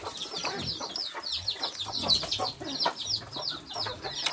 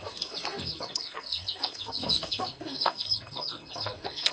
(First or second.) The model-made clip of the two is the second